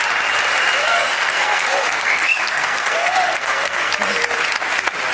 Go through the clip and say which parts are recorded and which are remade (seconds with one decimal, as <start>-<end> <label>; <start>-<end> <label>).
0.0-0.8 recorded; 0.8-3.9 remade; 3.9-5.1 recorded